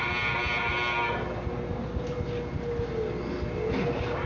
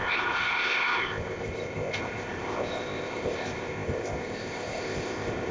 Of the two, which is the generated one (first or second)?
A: second